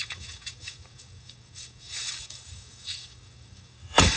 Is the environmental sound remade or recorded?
remade